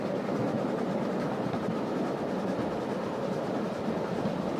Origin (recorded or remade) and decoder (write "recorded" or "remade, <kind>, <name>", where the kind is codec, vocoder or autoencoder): recorded